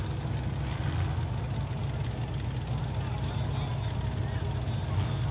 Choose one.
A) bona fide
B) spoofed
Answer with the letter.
A